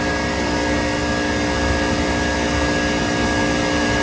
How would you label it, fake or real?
real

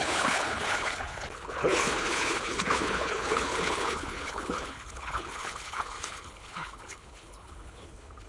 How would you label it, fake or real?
fake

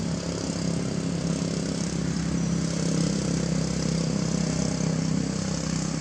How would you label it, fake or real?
real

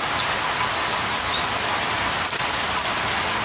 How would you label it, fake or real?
real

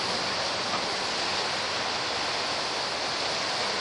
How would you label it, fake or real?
real